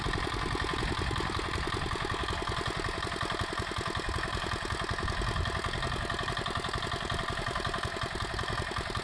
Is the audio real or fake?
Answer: real